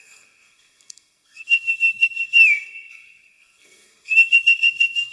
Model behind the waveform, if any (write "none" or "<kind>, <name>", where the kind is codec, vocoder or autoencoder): codec, SNAC